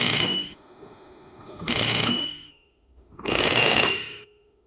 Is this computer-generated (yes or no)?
yes